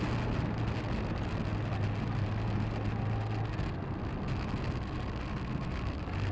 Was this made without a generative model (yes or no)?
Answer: yes